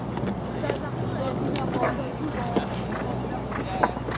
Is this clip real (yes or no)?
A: yes